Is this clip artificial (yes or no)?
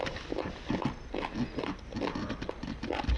no